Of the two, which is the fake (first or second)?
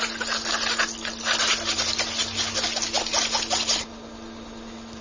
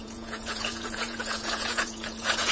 second